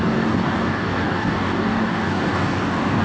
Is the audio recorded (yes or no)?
no